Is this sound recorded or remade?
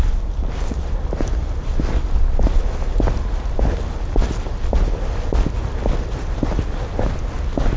recorded